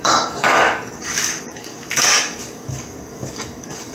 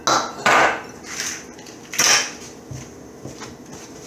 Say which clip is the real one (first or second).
second